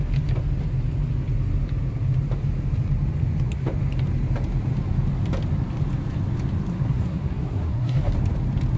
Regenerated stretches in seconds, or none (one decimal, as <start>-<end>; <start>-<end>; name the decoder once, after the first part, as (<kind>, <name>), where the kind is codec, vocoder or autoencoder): 6.7-8.1 (codec, SNAC)